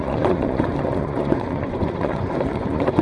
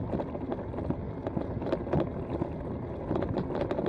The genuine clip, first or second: second